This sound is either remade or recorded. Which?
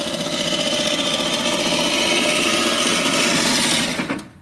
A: recorded